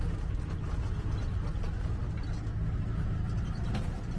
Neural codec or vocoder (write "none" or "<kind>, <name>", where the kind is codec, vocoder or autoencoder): none